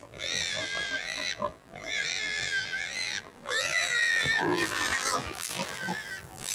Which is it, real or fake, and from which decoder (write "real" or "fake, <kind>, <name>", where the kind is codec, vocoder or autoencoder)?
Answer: fake, vocoder, BigVGAN v2